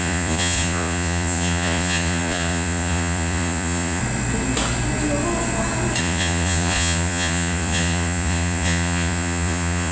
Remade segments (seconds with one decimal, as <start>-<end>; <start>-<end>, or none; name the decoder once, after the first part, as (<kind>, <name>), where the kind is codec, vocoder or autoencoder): 0.0-4.0 (vocoder, Vocos); 6.0-9.9